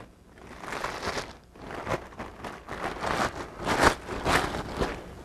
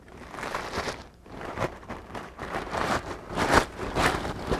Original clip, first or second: first